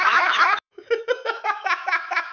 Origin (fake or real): fake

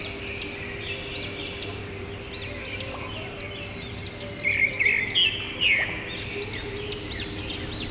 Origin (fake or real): real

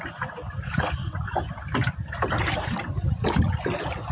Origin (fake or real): real